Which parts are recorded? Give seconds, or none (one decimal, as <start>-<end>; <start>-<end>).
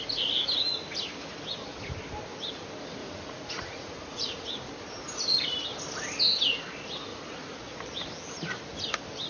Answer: 0.0-3.0; 4.7-7.1; 7.8-9.3